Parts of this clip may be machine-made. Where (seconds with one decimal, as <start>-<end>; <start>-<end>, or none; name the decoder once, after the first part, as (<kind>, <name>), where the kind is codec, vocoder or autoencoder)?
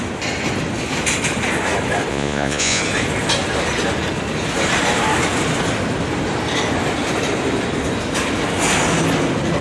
2.1-2.8 (vocoder, Vocos)